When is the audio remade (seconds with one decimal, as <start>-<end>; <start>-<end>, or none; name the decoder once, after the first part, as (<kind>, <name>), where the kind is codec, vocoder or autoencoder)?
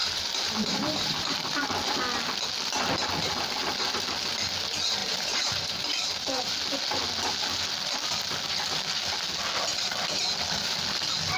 0.0-1.6 (vocoder, BigVGAN v2); 5.0-6.5; 9.7-10.2